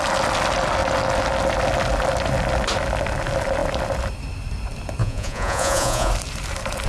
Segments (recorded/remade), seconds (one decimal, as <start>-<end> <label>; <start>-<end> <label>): 0.0-5.0 recorded; 5.0-6.1 remade; 6.1-6.9 recorded